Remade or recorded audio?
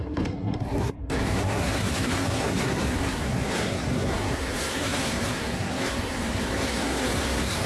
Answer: remade